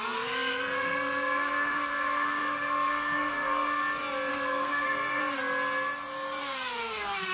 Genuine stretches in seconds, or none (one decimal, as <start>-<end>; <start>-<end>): 3.8-4.3; 5.2-6.4